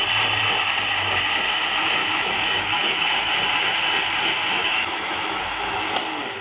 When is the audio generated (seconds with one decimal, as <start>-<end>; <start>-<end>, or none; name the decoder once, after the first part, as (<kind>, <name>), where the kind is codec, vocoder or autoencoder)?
2.0-3.3 (autoencoder, DAC-VAE); 4.6-5.8